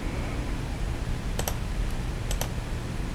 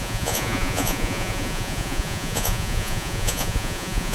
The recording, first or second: first